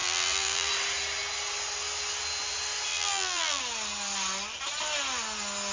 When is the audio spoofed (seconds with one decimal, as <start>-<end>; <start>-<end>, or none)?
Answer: 0.0-0.7; 2.9-3.6

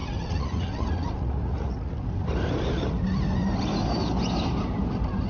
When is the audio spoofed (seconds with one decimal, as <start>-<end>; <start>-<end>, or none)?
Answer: 0.0-1.9

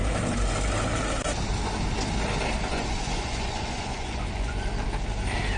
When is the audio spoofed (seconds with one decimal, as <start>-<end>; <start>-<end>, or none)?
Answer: 2.7-4.7

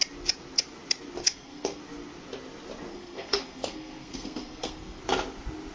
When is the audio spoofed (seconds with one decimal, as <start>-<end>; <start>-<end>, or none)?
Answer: 1.2-1.8; 2.9-5.0

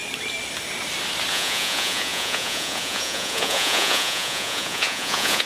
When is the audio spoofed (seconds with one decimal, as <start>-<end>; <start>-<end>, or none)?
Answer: 1.3-5.5

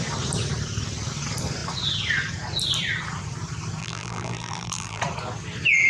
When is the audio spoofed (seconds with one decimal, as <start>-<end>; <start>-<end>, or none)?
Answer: 3.8-5.0

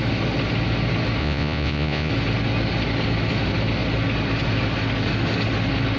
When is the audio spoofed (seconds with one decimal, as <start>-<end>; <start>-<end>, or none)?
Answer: 1.2-2.1